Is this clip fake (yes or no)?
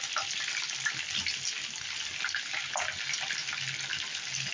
no